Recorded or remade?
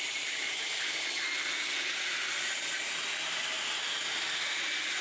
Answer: recorded